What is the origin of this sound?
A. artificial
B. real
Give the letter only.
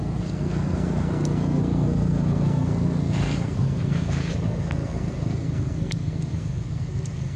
A